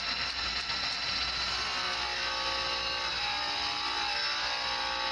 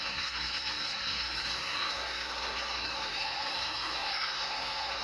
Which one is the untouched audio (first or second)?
first